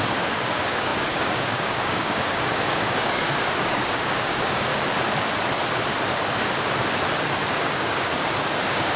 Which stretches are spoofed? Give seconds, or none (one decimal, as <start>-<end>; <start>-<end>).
0.0-4.7; 7.5-9.0